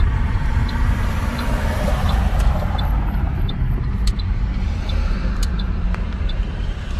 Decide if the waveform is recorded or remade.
remade